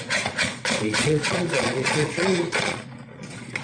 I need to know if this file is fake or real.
fake